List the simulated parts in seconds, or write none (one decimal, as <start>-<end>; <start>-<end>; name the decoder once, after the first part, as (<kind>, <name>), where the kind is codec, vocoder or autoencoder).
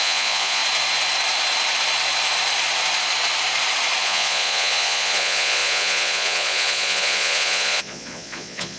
0.0-0.6 (vocoder, Vocos); 4.0-8.8